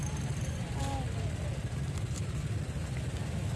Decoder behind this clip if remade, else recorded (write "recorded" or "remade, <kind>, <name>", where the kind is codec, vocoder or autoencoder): recorded